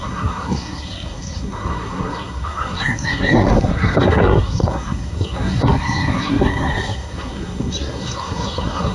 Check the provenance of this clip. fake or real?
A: fake